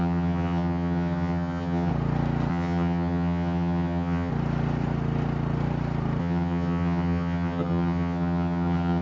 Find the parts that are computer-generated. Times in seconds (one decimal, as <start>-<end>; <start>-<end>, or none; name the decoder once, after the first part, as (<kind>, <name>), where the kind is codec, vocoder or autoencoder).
0.0-1.9 (vocoder, HiFi-GAN); 2.5-4.3; 6.2-9.0